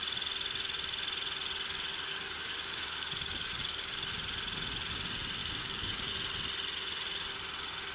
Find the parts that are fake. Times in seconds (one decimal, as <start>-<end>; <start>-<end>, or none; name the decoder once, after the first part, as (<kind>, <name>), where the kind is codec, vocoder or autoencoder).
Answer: 2.1-4.1 (codec, DAC); 5.4-6.1